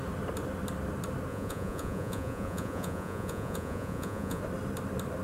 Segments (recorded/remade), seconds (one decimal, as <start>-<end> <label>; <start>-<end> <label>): 0.0-1.3 recorded; 1.3-4.4 remade; 4.4-5.2 recorded